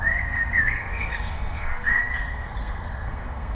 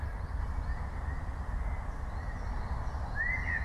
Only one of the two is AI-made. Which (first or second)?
first